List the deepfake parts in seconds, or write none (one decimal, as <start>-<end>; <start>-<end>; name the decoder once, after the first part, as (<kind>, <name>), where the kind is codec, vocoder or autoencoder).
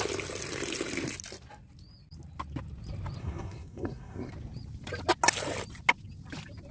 3.2-4.3 (codec, SNAC)